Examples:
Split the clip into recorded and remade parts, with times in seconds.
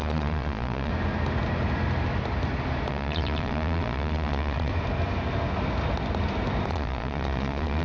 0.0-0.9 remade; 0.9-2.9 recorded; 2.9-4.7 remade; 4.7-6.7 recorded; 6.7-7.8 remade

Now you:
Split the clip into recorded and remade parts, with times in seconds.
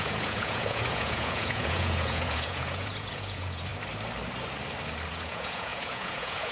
0.0-3.7 remade; 3.7-5.1 recorded; 5.1-6.5 remade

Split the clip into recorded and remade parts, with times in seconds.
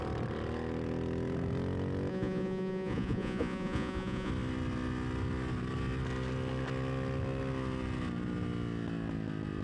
0.0-2.1 recorded; 2.1-4.3 remade; 4.3-9.6 recorded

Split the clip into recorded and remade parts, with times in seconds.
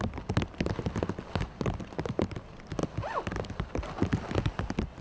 0.0-5.0 recorded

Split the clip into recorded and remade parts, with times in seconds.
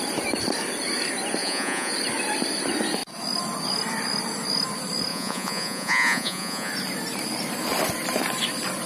0.0-1.4 recorded; 1.4-1.9 remade; 1.9-5.1 recorded; 5.1-6.7 remade; 6.7-8.9 recorded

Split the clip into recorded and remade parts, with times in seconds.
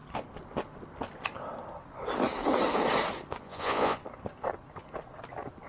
0.0-3.4 recorded; 3.4-4.0 remade; 4.0-5.7 recorded